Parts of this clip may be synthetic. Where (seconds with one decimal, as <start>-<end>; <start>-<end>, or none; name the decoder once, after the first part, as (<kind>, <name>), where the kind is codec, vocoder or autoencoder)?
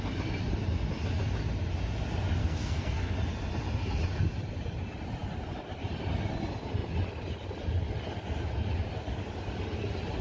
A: 2.4-3.1 (codec, SNAC)